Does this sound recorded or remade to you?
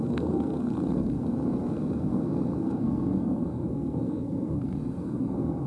remade